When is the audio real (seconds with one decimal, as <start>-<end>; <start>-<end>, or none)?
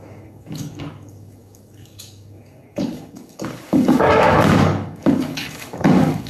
none